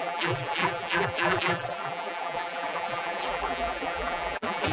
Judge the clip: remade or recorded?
remade